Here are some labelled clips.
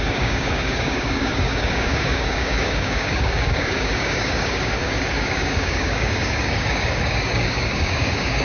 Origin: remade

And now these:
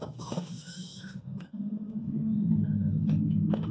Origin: remade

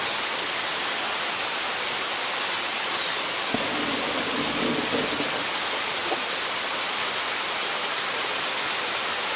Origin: recorded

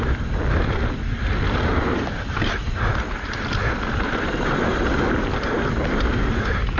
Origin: recorded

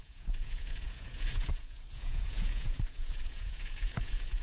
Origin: remade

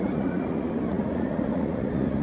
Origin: remade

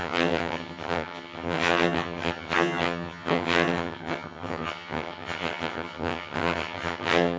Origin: remade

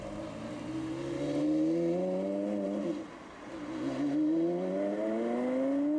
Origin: recorded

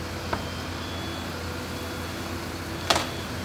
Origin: recorded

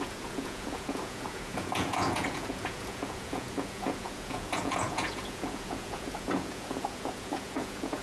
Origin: remade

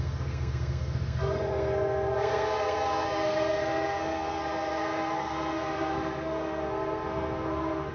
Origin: remade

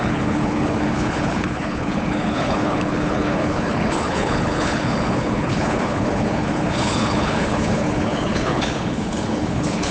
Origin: remade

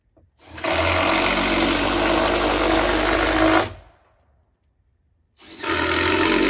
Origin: recorded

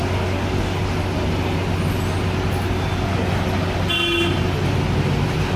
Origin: recorded